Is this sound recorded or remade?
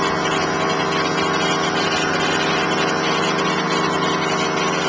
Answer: recorded